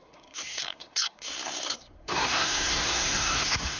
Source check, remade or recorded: remade